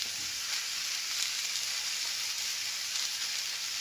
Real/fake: fake